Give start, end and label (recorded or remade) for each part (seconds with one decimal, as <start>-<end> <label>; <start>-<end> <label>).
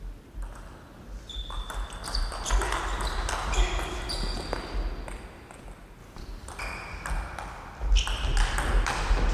0.0-6.0 recorded; 6.0-6.6 remade; 6.6-9.3 recorded